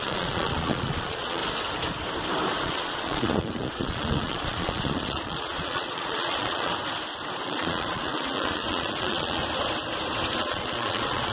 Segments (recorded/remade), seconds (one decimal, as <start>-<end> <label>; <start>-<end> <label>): 0.0-1.4 remade; 1.4-2.6 recorded; 2.6-6.7 remade; 6.7-7.4 recorded; 7.4-9.4 remade; 9.4-10.4 recorded; 10.4-11.3 remade